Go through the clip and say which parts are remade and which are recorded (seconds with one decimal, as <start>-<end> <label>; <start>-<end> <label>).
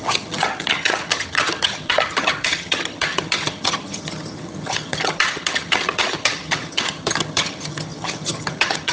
0.0-8.9 remade